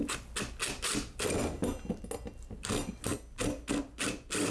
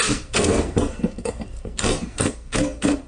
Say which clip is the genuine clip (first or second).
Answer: first